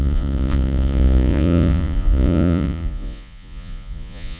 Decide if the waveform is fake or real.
fake